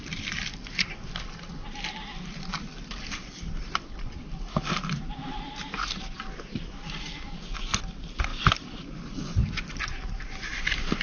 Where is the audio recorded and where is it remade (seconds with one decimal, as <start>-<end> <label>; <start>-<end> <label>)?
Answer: 0.0-11.0 remade